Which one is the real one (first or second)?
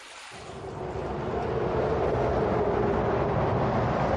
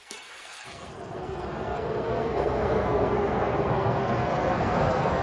first